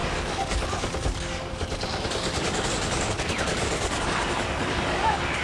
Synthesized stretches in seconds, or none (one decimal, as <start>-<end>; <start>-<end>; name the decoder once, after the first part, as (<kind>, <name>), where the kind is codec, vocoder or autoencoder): 0.0-5.4 (codec, DAC)